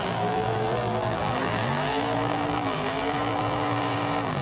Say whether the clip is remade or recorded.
remade